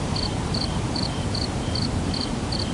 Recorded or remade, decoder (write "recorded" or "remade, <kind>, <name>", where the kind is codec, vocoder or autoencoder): remade, vocoder, BigVGAN v2